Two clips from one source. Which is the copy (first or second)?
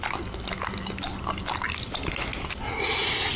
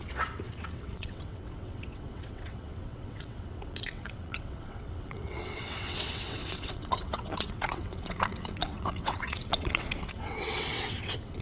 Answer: second